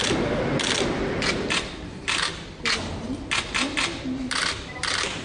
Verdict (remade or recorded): recorded